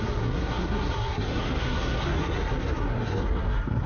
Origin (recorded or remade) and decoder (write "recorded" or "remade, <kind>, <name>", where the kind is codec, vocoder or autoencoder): remade, codec, SNAC